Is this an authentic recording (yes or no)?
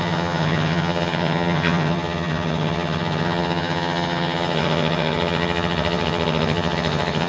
no